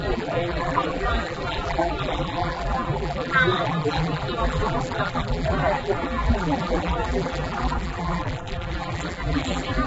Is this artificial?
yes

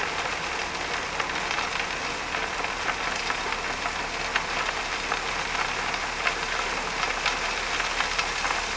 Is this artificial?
no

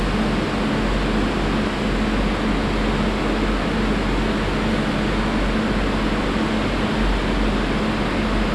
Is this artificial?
no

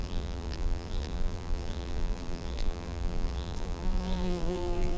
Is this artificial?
yes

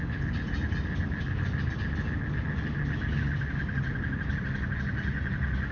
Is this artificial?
no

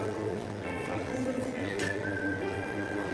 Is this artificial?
yes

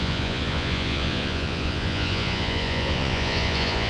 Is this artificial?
yes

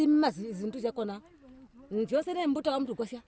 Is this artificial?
no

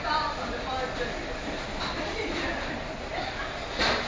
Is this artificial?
no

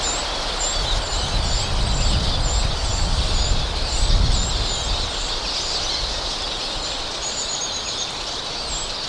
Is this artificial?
no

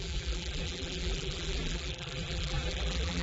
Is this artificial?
yes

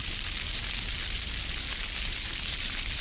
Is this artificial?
no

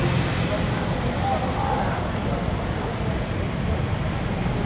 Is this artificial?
no